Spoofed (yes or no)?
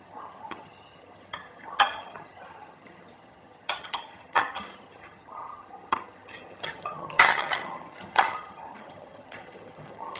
yes